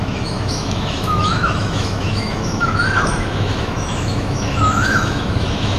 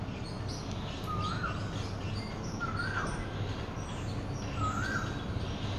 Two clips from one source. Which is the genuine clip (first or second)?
second